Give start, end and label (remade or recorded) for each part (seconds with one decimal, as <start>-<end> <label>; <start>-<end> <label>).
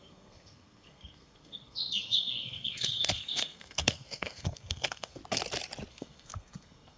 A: 0.0-5.2 remade; 5.2-5.9 recorded; 5.9-7.0 remade